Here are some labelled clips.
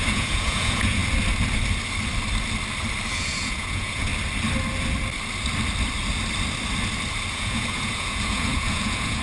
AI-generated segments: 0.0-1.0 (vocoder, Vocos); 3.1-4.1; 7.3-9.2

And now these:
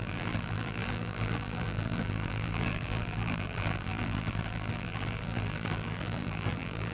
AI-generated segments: 0.0-6.9 (vocoder, BigVGAN v2)

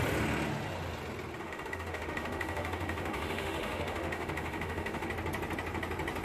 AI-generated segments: 1.4-5.1 (autoencoder, DAC-VAE)

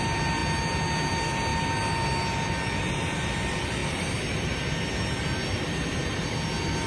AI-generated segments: none